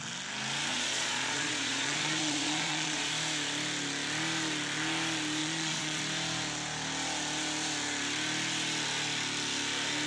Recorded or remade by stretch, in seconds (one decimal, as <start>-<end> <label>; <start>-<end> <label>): 0.0-0.7 recorded; 0.7-3.1 remade; 3.1-5.4 recorded; 5.4-6.0 remade; 6.0-10.1 recorded